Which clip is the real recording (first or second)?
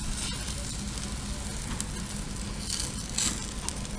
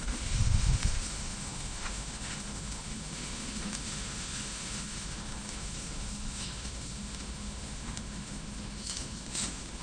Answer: first